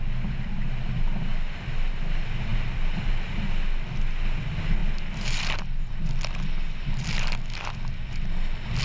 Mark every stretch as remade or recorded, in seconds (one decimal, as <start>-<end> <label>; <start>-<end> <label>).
0.0-8.8 recorded